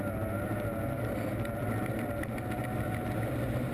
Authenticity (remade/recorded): recorded